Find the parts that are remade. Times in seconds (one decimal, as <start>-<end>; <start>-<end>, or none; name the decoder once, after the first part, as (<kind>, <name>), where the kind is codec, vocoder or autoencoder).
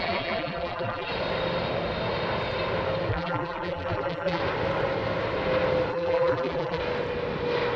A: 0.0-1.1 (vocoder, BigVGAN v2); 3.1-4.4; 5.9-6.8